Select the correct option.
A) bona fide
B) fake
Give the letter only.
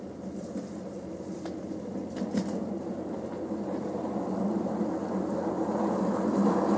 A